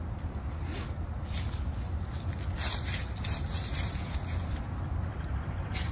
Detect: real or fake real